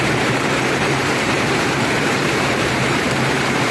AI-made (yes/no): yes